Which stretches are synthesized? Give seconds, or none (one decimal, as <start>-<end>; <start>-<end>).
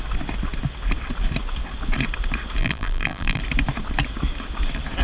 2.6-3.4